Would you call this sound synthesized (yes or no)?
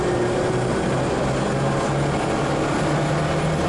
no